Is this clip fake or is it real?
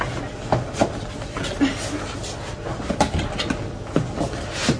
real